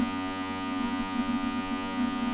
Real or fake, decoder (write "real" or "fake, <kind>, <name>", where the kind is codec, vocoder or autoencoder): fake, vocoder, Vocos